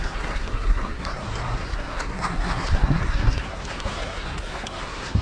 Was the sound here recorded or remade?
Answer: remade